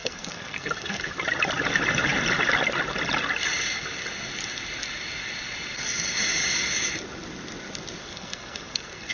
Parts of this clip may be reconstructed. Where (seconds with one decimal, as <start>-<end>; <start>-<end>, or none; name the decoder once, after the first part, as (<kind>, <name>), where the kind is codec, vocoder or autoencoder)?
0.0-1.1 (codec, SNAC); 8.0-9.1

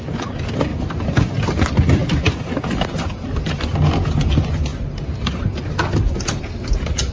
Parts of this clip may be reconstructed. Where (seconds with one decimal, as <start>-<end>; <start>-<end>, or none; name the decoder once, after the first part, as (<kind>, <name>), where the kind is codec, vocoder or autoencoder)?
none

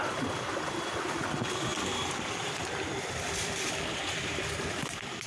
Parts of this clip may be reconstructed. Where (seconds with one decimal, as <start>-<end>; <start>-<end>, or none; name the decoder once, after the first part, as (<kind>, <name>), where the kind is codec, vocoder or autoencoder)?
none

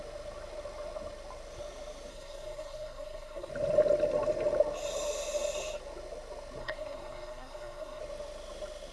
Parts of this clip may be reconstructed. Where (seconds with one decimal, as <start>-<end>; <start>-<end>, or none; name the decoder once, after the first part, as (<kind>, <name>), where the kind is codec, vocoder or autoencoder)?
2.1-3.5 (codec, SNAC); 6.6-8.0